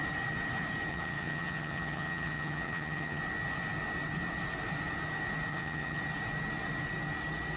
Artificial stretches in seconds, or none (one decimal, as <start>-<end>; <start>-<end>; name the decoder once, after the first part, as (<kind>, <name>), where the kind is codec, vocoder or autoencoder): 0.9-3.2 (vocoder, HiFi-GAN); 5.5-6.0